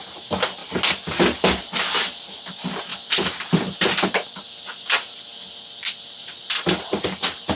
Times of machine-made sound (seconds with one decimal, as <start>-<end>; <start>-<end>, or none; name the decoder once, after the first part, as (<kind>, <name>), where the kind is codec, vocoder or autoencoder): none